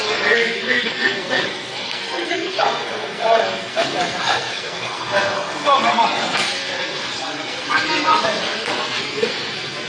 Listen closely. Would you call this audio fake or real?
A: fake